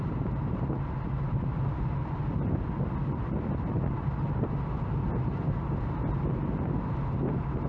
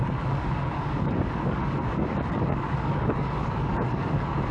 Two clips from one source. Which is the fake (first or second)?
second